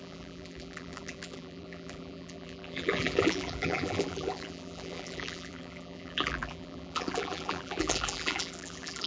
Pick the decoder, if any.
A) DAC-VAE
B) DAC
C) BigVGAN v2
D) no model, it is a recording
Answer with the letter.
C